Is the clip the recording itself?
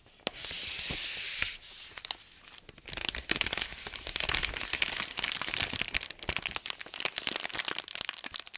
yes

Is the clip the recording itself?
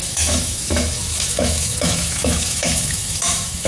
no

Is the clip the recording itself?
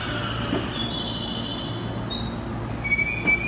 yes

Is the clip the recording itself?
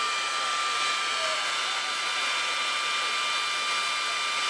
yes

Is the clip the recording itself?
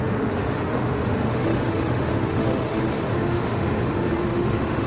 no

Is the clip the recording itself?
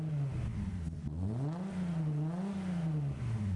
yes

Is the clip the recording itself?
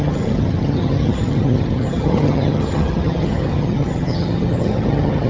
no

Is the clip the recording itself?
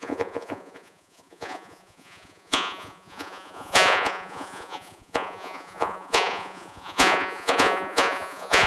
no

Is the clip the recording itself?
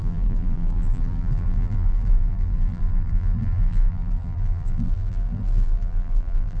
no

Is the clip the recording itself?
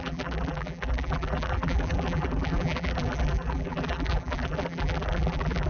no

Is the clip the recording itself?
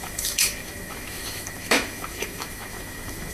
no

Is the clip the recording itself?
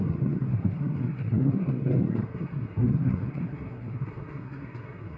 no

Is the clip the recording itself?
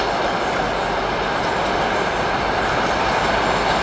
yes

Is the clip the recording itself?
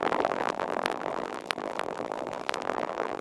no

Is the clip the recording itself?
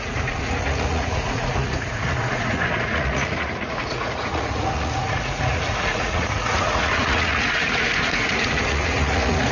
no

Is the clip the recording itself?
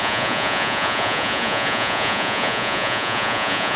no